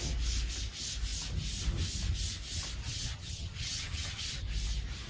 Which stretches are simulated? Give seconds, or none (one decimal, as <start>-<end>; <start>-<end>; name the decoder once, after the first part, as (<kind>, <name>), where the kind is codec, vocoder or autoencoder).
2.8-4.3 (vocoder, HiFi-GAN)